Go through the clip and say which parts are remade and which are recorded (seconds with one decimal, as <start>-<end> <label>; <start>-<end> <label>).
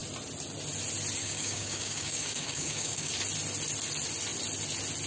0.0-1.2 recorded; 1.2-3.1 remade; 3.1-5.1 recorded